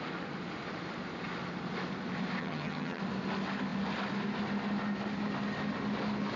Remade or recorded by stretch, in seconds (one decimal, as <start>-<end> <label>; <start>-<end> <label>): 0.0-2.4 recorded; 2.4-3.0 remade; 3.0-6.4 recorded